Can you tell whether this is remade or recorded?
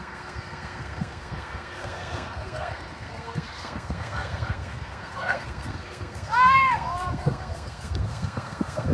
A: remade